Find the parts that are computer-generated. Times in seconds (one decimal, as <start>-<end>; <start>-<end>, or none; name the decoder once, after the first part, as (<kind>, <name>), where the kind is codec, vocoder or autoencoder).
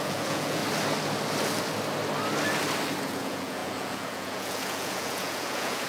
0.0-0.6 (vocoder, Vocos); 3.0-5.9